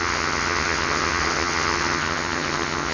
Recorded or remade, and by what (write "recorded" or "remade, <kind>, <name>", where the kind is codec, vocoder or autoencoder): remade, vocoder, HiFi-GAN